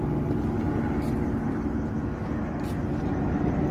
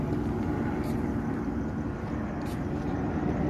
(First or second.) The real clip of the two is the first